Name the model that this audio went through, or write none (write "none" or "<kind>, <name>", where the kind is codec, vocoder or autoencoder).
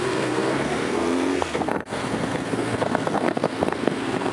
codec, SNAC